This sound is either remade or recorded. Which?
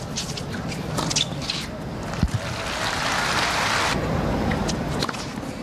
recorded